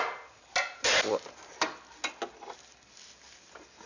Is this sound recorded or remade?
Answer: recorded